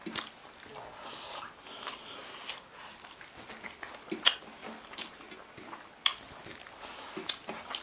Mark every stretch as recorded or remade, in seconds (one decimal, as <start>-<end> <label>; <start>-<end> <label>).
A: 0.0-7.8 recorded